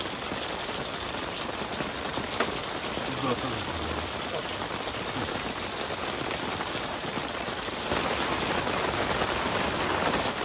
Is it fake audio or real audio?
real